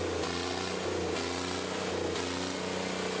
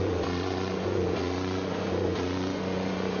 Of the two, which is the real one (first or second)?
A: first